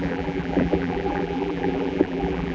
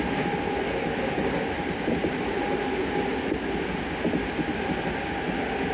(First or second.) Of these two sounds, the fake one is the first